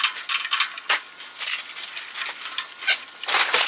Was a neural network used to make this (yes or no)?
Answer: no